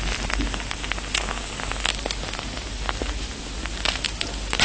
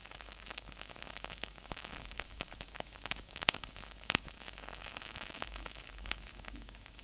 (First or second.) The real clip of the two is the first